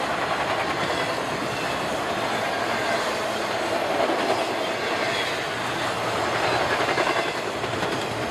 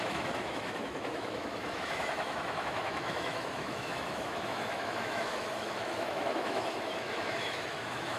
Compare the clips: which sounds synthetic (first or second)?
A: second